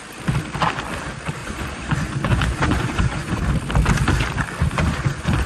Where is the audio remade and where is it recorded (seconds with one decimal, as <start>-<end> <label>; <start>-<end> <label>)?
0.0-1.4 recorded; 1.4-3.4 remade; 3.4-4.6 recorded; 4.6-5.5 remade